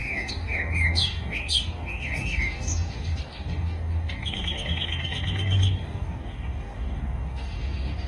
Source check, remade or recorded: remade